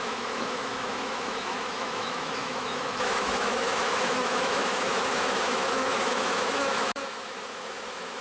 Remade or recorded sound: remade